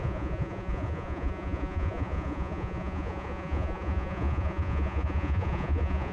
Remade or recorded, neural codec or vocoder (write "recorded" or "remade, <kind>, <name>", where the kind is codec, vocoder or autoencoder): remade, vocoder, Vocos